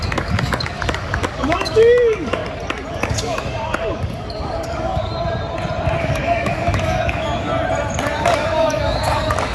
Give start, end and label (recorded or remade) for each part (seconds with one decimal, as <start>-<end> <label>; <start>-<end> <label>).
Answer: 0.0-2.4 remade; 2.4-2.9 recorded; 2.9-5.1 remade; 5.1-6.0 recorded; 6.0-7.5 remade; 7.5-8.2 recorded; 8.2-9.5 remade